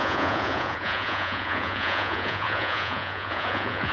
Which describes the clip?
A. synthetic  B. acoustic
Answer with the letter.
A